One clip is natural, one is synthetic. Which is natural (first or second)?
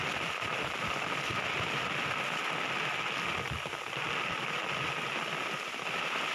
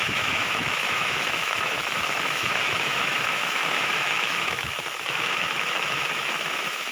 first